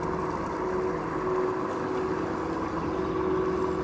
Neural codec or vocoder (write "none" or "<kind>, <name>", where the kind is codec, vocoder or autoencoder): none